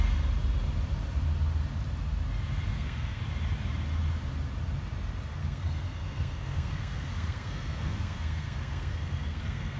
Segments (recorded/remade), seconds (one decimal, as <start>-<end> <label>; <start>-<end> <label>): 0.0-2.7 recorded; 2.7-3.2 remade; 3.2-5.4 recorded; 5.4-9.8 remade